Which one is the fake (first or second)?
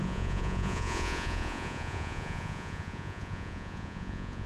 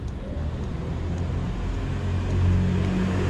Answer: first